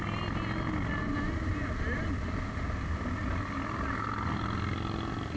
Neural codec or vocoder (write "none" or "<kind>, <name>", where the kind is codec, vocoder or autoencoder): none